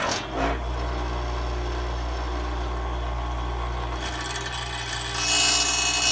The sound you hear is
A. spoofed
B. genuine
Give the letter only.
B